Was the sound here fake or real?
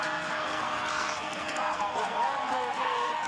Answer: fake